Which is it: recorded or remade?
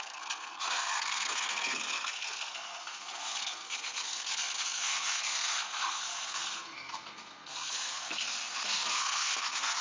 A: remade